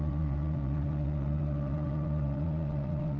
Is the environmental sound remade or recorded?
remade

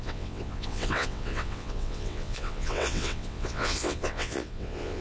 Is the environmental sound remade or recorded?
remade